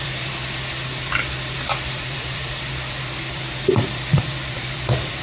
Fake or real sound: fake